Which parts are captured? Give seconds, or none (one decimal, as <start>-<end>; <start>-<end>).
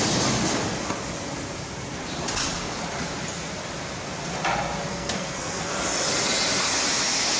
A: 0.0-4.9; 5.7-7.4